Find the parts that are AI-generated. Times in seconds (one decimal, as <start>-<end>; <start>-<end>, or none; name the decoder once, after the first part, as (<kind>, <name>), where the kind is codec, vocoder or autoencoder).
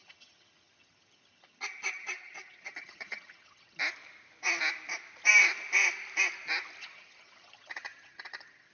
0.0-3.8 (vocoder, HiFi-GAN); 6.8-8.7